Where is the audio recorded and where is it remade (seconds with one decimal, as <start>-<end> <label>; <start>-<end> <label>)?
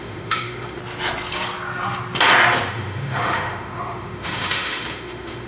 0.0-0.8 remade; 0.8-2.7 recorded; 2.7-5.5 remade